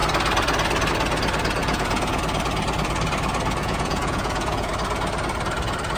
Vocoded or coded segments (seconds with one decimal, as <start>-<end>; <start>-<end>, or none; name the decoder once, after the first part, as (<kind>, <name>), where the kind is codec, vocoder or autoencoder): 1.6-2.2 (vocoder, Vocos); 3.6-4.7